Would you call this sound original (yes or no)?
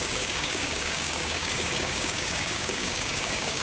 no